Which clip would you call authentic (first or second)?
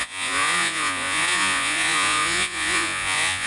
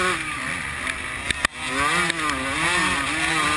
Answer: second